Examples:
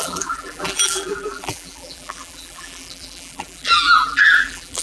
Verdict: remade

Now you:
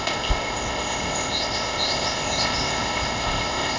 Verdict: remade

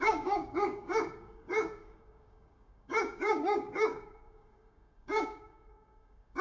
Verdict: remade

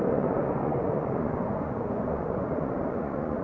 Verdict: remade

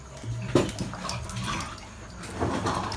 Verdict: recorded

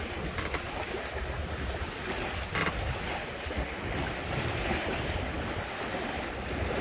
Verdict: recorded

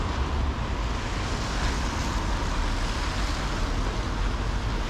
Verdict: recorded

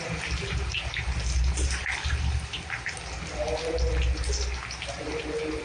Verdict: recorded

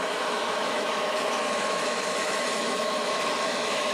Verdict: remade